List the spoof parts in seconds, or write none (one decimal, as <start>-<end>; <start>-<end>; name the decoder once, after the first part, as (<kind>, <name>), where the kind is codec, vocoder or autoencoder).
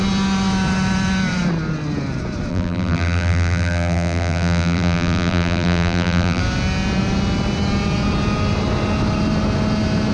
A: 2.5-6.4 (vocoder, BigVGAN v2)